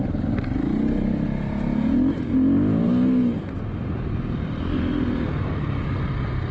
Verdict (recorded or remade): recorded